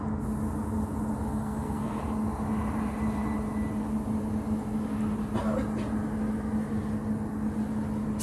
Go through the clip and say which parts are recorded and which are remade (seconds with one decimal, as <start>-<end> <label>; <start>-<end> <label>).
0.0-1.3 recorded; 1.3-2.0 remade; 2.0-8.2 recorded